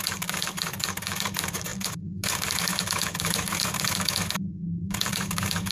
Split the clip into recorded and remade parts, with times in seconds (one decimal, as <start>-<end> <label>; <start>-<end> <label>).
0.0-5.7 remade